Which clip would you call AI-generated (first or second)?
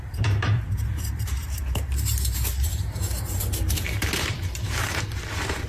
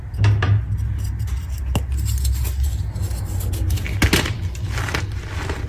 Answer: first